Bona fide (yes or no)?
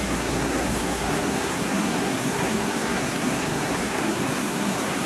no